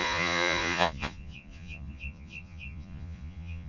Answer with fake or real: fake